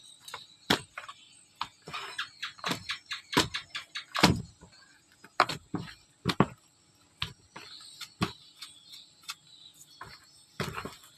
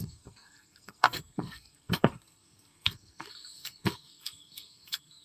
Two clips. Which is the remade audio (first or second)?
second